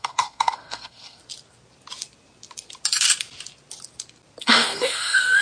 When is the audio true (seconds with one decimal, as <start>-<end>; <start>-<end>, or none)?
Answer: 1.2-4.4